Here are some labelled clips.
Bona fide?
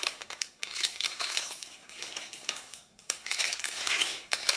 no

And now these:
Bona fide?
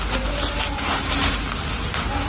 yes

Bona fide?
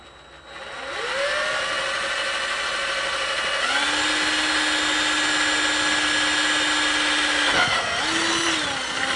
yes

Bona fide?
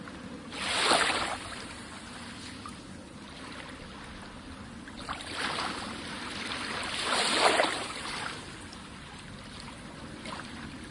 yes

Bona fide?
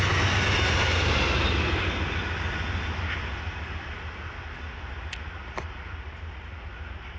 yes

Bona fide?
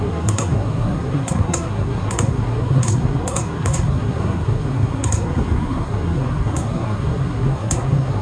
no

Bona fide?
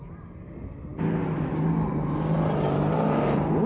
yes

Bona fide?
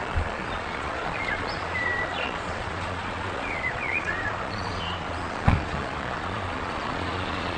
no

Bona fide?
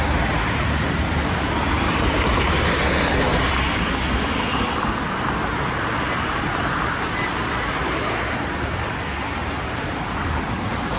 yes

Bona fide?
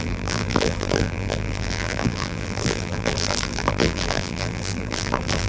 no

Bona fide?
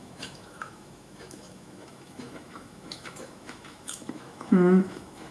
no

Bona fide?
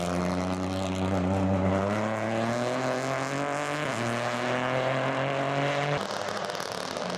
yes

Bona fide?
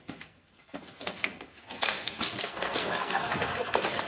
no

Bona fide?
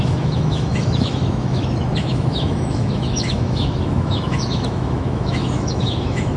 no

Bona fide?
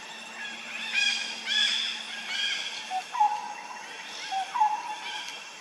yes